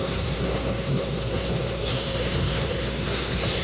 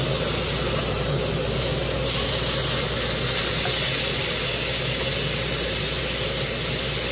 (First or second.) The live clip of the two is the second